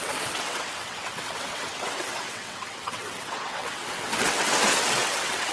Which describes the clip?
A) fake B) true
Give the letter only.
A